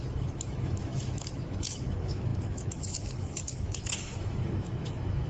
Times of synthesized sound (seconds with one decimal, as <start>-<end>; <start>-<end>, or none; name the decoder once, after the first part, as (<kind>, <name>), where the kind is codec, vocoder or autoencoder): 0.0-5.3 (autoencoder, DAC-VAE)